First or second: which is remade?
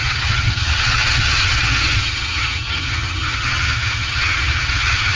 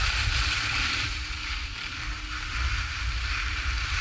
first